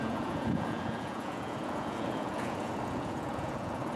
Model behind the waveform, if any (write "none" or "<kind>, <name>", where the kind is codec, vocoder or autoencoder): vocoder, Vocos